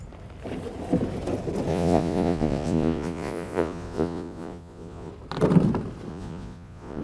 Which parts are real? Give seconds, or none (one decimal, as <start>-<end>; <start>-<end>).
0.0-1.7; 5.1-6.1